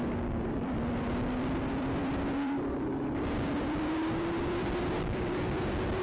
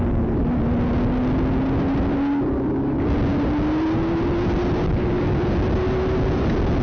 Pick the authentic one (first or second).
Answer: second